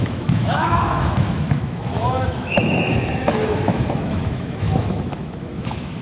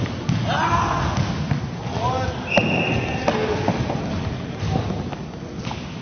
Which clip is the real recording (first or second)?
second